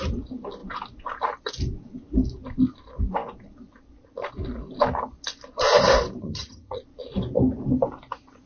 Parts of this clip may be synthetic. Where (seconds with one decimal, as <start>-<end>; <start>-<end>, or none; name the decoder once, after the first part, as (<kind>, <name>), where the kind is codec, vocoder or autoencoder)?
6.2-6.8 (vocoder, HiFi-GAN)